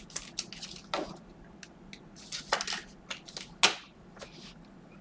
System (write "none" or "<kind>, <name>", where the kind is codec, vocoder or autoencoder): none